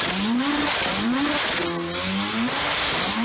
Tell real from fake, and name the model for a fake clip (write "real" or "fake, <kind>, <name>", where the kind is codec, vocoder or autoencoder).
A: real